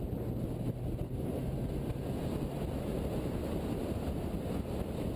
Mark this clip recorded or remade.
recorded